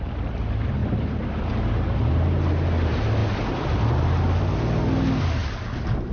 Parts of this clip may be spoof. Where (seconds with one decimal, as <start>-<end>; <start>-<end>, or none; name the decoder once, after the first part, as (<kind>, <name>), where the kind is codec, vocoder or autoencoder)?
none